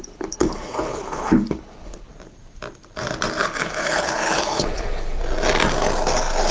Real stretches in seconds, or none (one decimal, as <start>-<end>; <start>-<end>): 2.1-3.4; 5.2-6.5